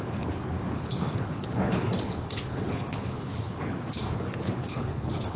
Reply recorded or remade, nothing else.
remade